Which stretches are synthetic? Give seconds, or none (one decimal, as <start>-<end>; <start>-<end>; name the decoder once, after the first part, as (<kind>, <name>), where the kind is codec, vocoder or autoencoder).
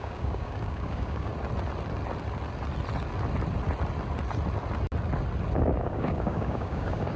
0.0-1.3 (codec, DAC); 5.6-7.2